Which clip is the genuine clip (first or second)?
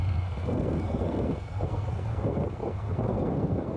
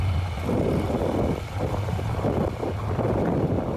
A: second